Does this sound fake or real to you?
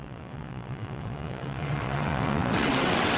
fake